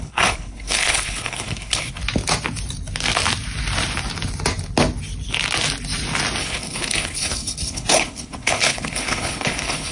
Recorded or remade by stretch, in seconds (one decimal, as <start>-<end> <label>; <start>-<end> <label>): 0.0-2.0 remade; 2.0-6.4 recorded; 6.4-9.9 remade

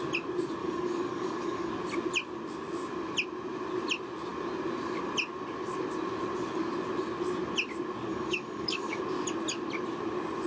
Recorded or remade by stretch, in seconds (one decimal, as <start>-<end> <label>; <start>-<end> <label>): 0.0-0.6 recorded; 0.6-1.7 remade; 1.7-8.1 recorded; 8.1-9.0 remade; 9.0-10.5 recorded